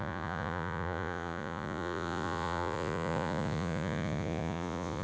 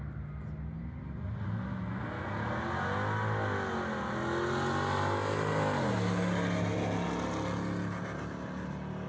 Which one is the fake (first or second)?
first